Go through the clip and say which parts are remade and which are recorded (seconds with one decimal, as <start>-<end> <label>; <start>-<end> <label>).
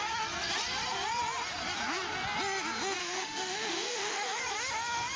0.0-3.0 recorded; 3.0-4.4 remade; 4.4-5.2 recorded